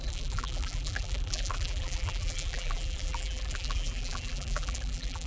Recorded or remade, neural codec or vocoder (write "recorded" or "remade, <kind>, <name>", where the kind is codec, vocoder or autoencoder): remade, vocoder, BigVGAN v2